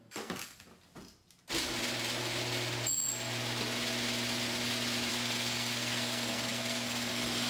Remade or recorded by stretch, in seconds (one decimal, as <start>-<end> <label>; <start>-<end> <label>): 0.0-0.7 remade; 0.7-5.1 recorded; 5.1-7.5 remade